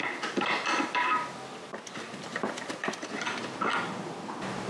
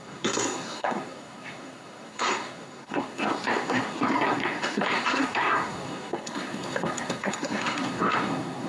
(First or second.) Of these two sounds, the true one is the first